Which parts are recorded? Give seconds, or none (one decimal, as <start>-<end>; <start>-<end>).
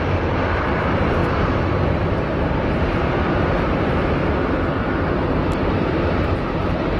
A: 1.2-2.1; 4.2-5.4